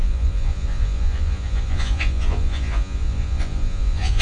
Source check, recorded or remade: remade